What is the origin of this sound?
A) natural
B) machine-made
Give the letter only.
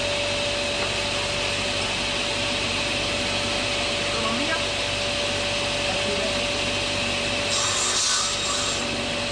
A